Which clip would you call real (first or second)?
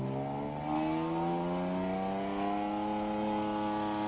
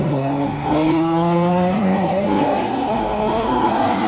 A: first